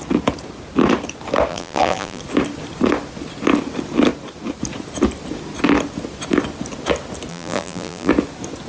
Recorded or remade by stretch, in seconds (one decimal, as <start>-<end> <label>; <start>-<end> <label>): 0.0-1.5 recorded; 1.5-2.2 remade; 2.2-7.3 recorded; 7.3-8.1 remade; 8.1-8.7 recorded